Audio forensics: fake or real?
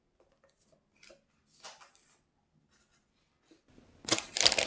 real